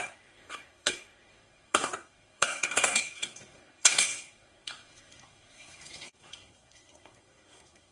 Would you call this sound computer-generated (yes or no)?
yes